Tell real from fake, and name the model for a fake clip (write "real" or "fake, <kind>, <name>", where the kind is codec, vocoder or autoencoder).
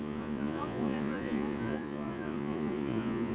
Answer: fake, vocoder, Vocos